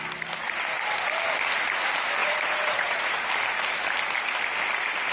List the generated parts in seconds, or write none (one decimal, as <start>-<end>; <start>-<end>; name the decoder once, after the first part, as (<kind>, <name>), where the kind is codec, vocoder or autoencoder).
2.2-3.2 (vocoder, Vocos)